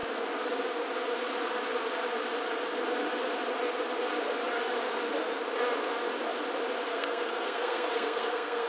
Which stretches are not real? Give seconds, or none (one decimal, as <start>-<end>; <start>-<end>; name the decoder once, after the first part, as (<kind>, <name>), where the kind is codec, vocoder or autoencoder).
6.9-8.7 (codec, SNAC)